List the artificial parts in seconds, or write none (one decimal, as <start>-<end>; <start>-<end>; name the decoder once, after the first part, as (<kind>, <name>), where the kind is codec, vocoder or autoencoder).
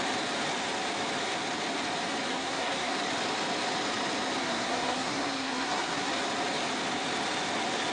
2.3-2.9 (codec, SNAC); 4.4-6.1